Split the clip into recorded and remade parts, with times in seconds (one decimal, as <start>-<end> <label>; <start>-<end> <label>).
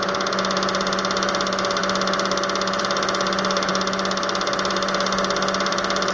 0.0-6.1 recorded